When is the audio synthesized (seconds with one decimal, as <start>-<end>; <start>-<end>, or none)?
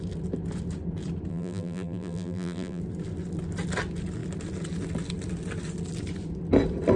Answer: 1.3-2.8